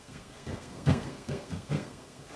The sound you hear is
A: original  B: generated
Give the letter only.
B